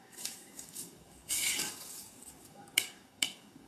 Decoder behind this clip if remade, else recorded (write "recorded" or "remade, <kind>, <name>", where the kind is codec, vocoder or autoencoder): remade, codec, DAC